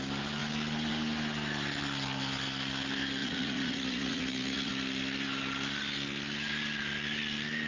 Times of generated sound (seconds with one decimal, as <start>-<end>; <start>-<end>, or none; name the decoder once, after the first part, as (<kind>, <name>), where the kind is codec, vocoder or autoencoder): 3.2-4.7 (vocoder, Vocos)